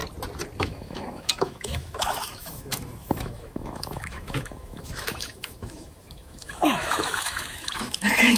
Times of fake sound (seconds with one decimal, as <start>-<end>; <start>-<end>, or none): 0.6-8.4